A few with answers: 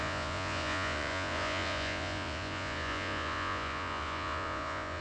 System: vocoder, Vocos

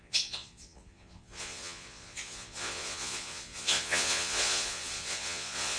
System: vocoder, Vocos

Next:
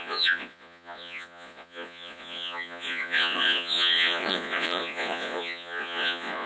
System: vocoder, Vocos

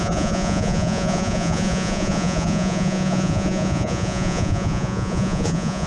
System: vocoder, Vocos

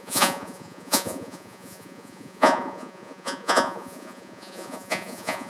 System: vocoder, Vocos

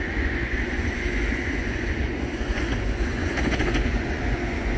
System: vocoder, Vocos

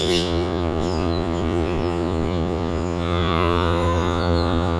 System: vocoder, Vocos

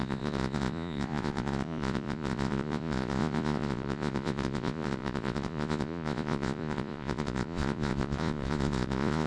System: vocoder, Vocos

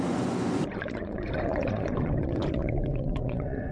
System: vocoder, Vocos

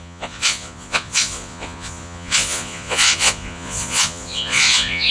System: vocoder, Vocos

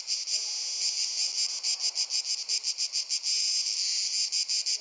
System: none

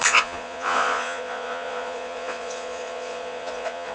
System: vocoder, Vocos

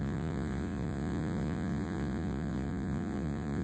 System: vocoder, Vocos